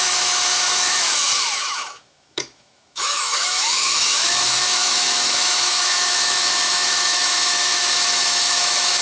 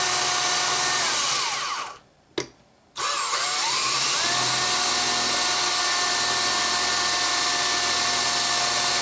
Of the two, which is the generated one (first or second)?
first